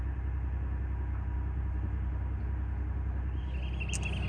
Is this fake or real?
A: real